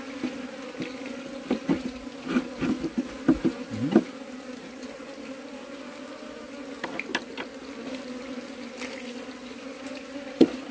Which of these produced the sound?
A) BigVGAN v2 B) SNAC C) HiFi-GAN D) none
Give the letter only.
D